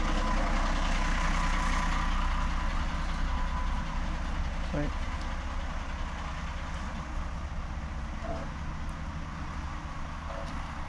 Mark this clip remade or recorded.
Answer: recorded